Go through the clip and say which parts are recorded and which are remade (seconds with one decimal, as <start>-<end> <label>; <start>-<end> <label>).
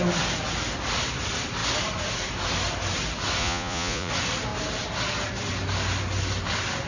0.0-3.4 recorded; 3.4-4.1 remade; 4.1-6.9 recorded